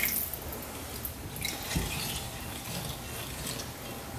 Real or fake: real